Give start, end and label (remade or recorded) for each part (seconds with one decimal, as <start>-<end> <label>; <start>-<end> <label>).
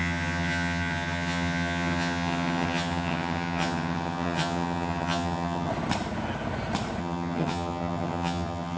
0.0-5.7 remade; 5.7-7.0 recorded; 7.0-8.8 remade